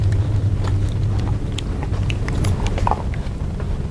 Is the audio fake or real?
fake